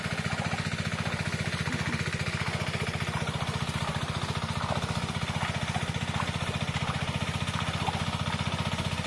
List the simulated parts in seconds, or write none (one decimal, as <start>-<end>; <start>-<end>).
none